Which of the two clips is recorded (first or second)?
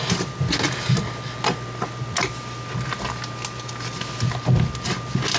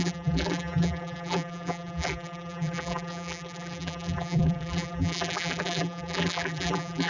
first